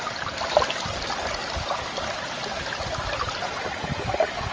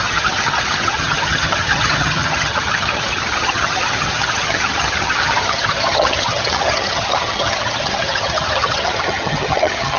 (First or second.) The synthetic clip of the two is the second